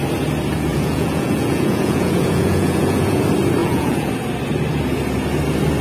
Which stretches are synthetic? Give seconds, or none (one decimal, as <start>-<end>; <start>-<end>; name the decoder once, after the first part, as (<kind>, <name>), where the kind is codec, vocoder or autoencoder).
0.7-3.2 (vocoder, Vocos); 3.6-4.1